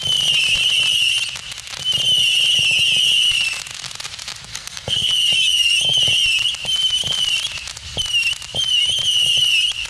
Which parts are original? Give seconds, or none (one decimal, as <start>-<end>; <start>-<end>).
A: 0.0-4.5; 5.1-9.9